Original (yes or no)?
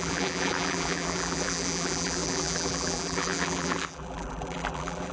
no